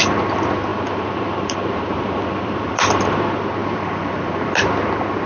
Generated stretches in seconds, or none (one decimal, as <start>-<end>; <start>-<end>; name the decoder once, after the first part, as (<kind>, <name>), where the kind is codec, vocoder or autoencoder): 0.7-3.0 (vocoder, BigVGAN v2); 3.6-4.5